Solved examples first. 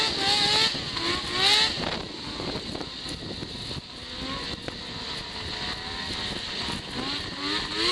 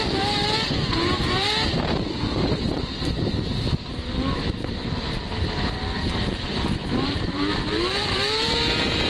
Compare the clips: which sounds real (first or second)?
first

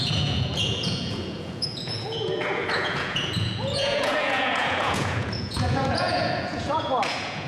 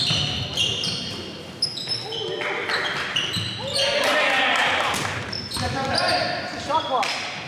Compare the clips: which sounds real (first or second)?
second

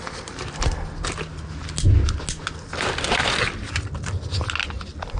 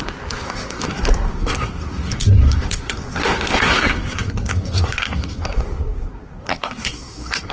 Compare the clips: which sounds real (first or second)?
first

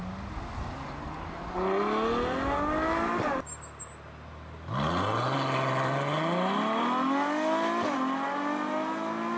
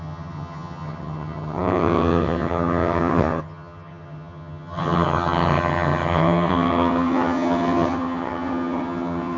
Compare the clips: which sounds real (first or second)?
first